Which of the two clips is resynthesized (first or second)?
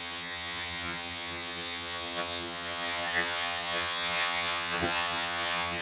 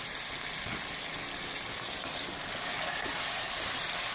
first